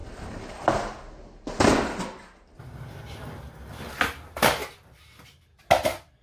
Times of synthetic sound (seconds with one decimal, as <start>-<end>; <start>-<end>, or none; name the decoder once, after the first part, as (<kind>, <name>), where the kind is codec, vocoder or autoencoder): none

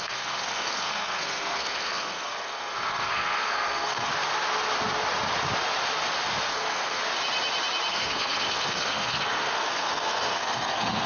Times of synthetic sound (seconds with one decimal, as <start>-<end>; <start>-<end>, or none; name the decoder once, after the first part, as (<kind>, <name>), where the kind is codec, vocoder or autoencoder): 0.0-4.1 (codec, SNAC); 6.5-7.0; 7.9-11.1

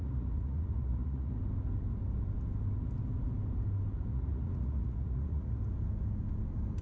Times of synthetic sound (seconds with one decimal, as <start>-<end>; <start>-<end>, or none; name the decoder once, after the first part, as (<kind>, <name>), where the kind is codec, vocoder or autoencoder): 0.0-1.4 (vocoder, Vocos); 4.1-5.6